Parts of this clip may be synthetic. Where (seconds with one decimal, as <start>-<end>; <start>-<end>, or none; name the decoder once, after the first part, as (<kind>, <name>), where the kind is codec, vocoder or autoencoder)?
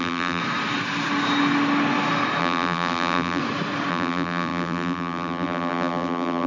0.0-0.4 (vocoder, BigVGAN v2); 2.4-3.4; 3.9-6.5